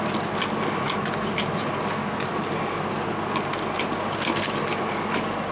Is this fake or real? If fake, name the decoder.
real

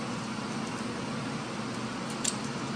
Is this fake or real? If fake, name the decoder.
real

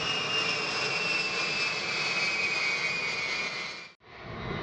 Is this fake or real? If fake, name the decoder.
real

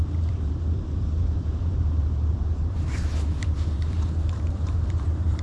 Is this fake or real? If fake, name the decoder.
fake, vocoder, BigVGAN v2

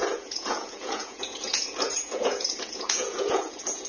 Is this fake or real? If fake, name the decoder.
fake, vocoder, Vocos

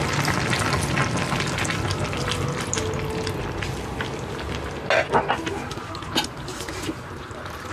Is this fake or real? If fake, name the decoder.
real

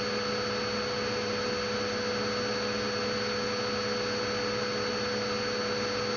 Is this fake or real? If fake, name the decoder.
real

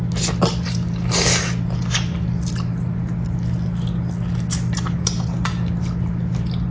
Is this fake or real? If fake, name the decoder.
real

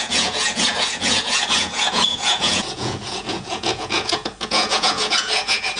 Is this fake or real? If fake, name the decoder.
fake, vocoder, Vocos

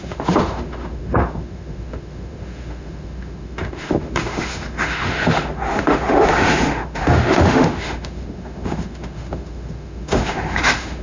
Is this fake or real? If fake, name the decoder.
fake, autoencoder, DAC-VAE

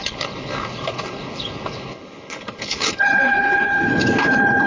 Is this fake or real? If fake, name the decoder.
fake, codec, HILCodec